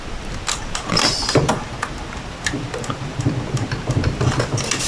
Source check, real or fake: real